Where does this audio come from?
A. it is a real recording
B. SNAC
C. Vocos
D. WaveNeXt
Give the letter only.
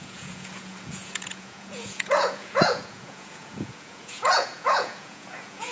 C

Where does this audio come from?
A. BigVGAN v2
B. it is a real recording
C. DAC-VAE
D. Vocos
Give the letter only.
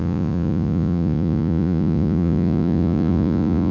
D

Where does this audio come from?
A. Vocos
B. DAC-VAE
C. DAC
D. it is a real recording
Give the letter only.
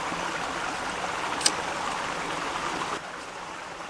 D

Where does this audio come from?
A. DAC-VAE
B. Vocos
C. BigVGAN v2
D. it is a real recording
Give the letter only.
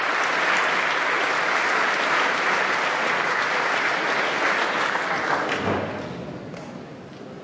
D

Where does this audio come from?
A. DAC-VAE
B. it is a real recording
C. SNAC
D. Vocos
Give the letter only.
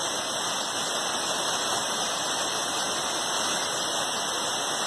B